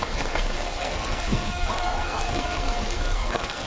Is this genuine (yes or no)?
no